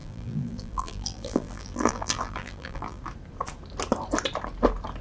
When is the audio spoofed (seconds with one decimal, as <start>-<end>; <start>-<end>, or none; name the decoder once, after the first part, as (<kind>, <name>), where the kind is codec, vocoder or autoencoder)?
0.0-3.0 (vocoder, BigVGAN v2)